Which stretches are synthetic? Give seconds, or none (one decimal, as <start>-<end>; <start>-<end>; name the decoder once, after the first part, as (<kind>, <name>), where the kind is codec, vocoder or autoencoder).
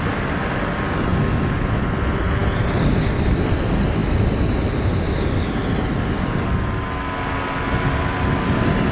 none